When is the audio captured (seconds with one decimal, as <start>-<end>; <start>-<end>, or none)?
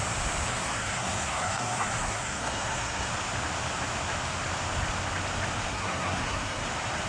0.0-0.5; 3.1-5.7; 6.6-7.1